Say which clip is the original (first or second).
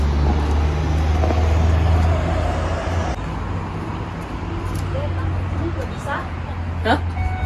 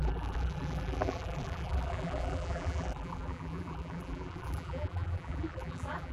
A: first